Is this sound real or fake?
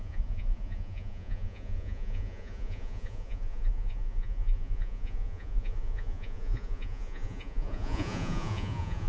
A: fake